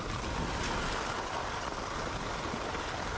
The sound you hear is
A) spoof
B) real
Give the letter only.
B